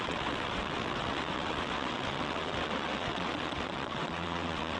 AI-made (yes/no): yes